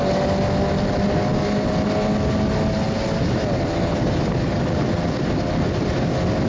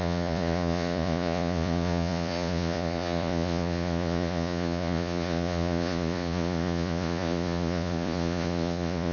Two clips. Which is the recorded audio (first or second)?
first